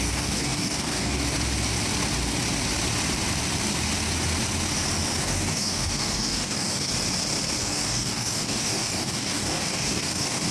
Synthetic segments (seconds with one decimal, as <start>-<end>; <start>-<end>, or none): 0.0-1.2; 5.2-6.9; 7.6-10.5